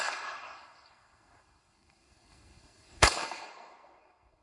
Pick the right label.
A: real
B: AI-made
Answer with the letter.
B